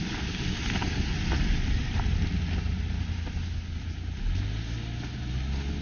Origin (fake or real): real